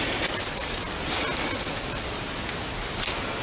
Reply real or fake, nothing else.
real